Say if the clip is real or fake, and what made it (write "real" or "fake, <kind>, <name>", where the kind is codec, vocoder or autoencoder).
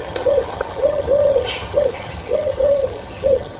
fake, vocoder, HiFi-GAN